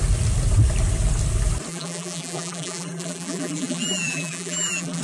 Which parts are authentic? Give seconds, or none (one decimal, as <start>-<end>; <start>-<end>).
0.0-1.7